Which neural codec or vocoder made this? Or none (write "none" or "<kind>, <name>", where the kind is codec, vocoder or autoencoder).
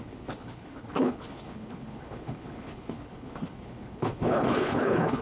codec, HILCodec